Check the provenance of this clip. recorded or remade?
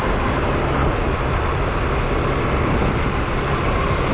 recorded